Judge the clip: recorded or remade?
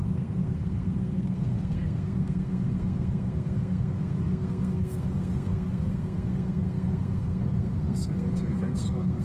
remade